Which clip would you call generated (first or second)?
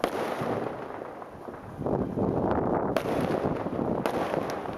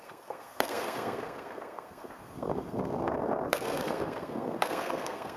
second